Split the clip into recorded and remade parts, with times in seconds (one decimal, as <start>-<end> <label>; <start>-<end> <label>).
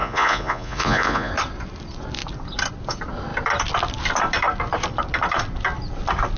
0.0-1.3 remade; 1.3-6.4 recorded